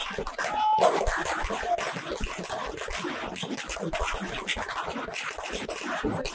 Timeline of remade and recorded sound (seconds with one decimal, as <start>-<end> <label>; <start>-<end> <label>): 0.0-6.3 recorded